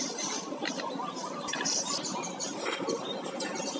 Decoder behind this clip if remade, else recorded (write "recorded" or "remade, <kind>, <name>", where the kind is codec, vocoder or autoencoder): remade, vocoder, BigVGAN v2